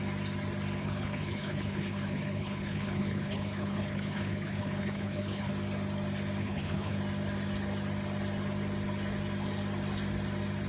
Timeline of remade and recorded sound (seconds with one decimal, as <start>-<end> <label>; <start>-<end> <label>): 0.0-0.8 recorded; 0.8-5.5 remade; 5.5-6.4 recorded; 6.4-7.0 remade; 7.0-10.7 recorded